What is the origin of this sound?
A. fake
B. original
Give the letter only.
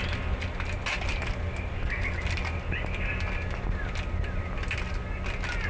B